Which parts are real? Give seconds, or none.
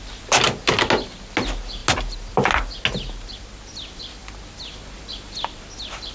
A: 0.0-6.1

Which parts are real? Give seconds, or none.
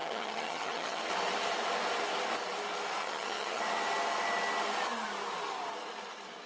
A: 1.0-3.0; 3.6-6.5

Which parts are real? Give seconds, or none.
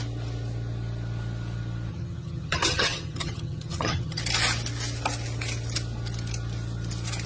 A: 0.0-1.9; 4.2-7.3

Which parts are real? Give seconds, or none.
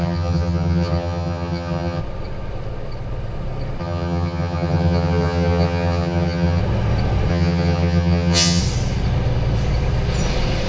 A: 2.0-3.8; 6.6-7.3; 8.6-10.7